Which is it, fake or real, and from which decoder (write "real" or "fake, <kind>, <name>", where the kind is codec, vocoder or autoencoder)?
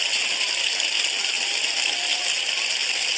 real